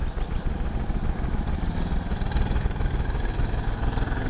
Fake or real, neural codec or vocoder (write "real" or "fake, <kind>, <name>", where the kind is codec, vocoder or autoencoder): real